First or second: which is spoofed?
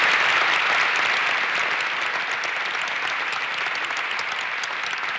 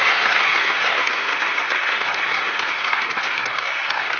second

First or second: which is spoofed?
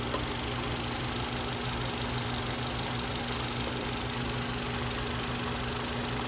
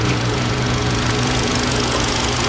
second